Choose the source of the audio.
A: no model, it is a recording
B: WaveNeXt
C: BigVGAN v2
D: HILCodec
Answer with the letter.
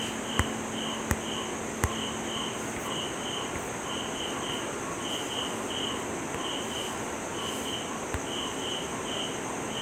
A